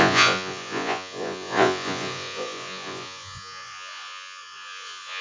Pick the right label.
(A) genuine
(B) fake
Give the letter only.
B